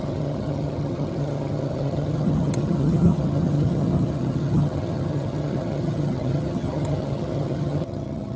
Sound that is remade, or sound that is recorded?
remade